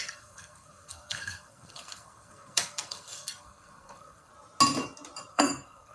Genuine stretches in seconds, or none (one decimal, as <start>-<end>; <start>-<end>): 4.3-5.3